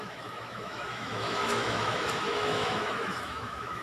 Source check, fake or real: fake